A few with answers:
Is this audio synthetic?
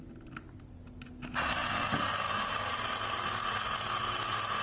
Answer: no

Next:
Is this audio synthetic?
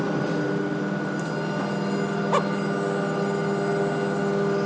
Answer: no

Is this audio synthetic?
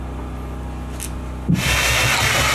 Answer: no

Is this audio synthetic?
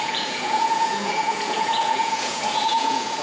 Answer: yes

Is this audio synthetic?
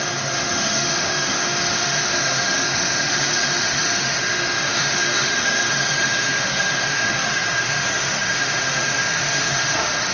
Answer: yes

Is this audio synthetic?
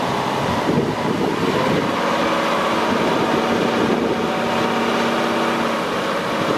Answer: no